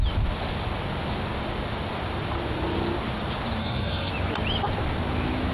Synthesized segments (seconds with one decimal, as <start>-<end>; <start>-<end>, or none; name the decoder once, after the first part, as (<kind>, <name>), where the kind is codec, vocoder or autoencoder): 3.6-4.1 (codec, SNAC)